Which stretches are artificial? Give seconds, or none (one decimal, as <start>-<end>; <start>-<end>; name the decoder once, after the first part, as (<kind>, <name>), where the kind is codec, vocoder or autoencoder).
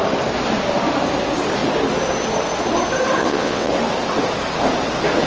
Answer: 3.2-3.7 (vocoder, WaveNeXt)